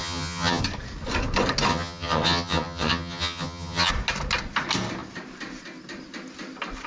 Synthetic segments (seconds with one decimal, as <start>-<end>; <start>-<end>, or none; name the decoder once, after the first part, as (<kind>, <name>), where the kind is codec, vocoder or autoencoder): 0.0-0.6 (vocoder, HiFi-GAN); 1.7-3.9

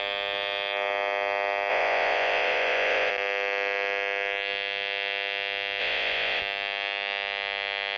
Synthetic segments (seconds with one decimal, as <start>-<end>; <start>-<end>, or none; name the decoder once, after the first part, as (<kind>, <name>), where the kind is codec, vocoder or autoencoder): 1.7-3.1 (vocoder, Vocos); 5.8-6.4

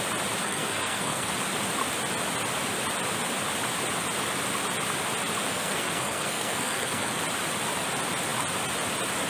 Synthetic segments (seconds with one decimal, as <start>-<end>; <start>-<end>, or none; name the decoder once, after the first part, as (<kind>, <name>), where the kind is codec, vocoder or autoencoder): 0.4-1.3 (codec, SNAC); 5.5-7.2